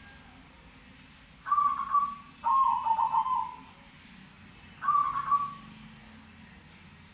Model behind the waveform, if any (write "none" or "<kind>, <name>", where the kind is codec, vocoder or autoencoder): none